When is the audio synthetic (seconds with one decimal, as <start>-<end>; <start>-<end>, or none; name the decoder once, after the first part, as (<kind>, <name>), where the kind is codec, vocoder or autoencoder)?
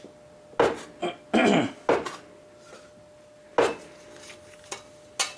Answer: none